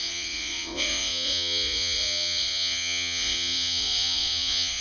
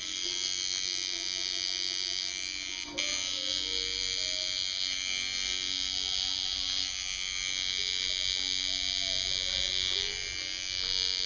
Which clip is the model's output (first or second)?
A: first